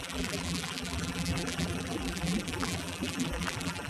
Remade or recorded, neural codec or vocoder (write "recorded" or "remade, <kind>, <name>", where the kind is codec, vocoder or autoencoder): remade, vocoder, BigVGAN v2